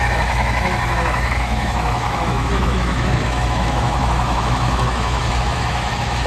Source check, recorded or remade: remade